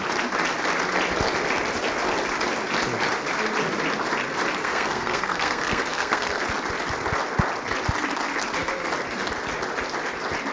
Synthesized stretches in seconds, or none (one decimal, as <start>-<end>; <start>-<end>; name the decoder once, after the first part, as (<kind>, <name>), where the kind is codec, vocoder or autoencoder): 4.6-6.4 (codec, SNAC)